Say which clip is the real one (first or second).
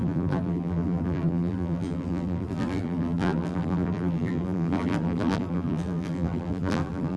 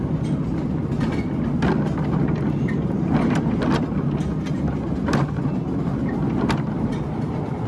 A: second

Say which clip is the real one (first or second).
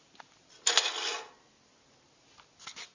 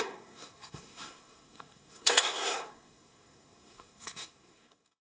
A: first